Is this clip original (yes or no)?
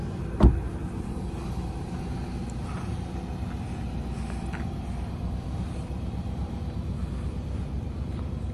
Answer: yes